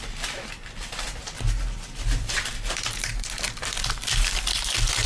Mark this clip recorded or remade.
remade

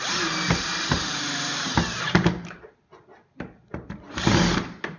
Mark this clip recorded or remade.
remade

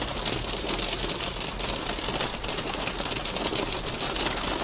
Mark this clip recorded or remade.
recorded